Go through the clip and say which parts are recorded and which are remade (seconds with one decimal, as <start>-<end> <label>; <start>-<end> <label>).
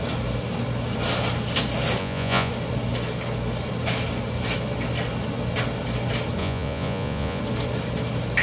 0.0-2.0 recorded; 2.0-2.5 remade; 2.5-6.4 recorded; 6.4-7.4 remade; 7.4-8.4 recorded